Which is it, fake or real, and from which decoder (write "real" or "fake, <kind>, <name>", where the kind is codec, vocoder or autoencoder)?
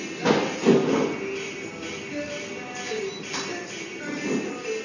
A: real